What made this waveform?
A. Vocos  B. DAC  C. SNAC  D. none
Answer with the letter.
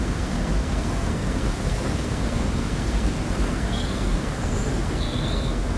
C